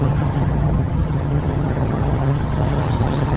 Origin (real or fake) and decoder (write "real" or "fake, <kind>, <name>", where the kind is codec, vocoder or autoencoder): fake, vocoder, HiFi-GAN